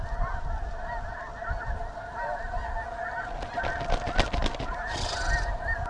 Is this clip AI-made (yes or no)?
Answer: no